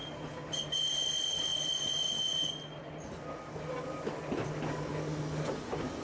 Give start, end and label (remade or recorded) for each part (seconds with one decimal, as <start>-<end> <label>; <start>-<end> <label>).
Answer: 0.0-6.0 recorded